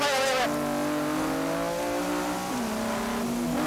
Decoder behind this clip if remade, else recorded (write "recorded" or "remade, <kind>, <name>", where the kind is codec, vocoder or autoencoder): recorded